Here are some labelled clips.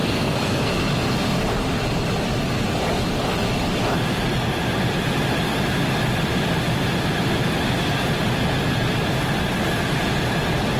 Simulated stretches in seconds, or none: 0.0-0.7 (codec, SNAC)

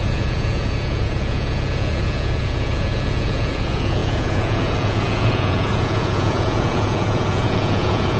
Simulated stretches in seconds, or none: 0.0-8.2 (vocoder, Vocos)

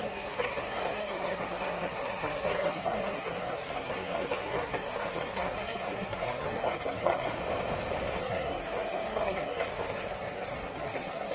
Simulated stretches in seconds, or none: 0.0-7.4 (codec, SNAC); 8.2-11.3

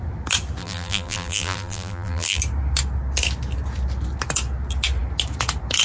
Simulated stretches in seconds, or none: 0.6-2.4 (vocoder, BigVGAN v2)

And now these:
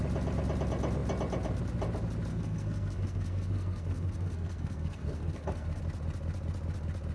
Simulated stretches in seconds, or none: 2.3-5.8 (codec, SNAC)

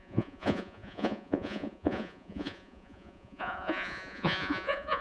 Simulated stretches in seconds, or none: 0.0-5.0 (vocoder, Vocos)

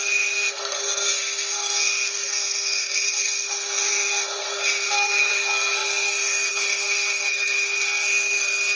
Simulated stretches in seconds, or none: 0.0-8.8 (codec, SNAC)

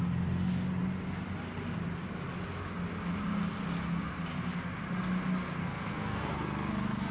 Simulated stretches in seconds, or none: 5.6-7.1 (codec, SNAC)